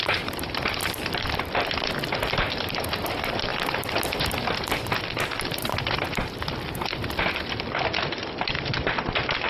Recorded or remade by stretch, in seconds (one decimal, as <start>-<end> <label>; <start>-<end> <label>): 0.0-9.5 remade